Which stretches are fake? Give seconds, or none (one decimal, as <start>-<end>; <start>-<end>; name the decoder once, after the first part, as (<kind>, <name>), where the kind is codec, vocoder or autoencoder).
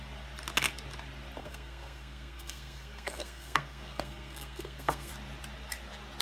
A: 1.4-5.1 (codec, SNAC)